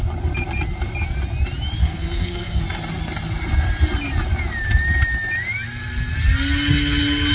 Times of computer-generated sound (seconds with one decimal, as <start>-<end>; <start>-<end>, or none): 1.8-2.6